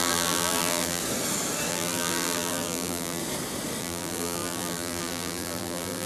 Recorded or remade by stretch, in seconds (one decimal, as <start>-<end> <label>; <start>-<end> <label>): 0.0-1.0 remade; 1.0-1.7 recorded; 1.7-3.2 remade; 3.2-3.8 recorded; 3.8-6.1 remade